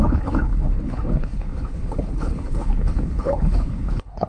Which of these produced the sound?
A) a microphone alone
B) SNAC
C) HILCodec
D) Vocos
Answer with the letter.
C